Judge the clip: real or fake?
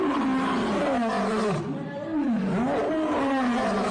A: real